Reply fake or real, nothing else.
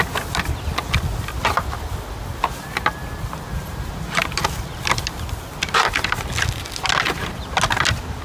real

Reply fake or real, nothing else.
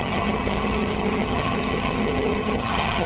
fake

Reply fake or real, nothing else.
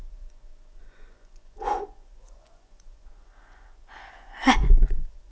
fake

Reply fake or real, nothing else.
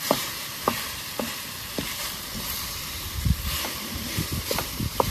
fake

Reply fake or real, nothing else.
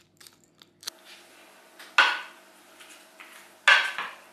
real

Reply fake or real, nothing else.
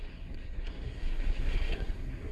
fake